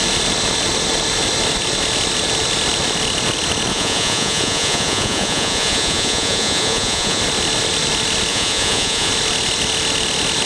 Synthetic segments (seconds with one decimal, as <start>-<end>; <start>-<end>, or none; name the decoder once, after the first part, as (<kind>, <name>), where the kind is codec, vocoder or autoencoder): 3.7-7.2 (vocoder, Vocos); 8.3-9.1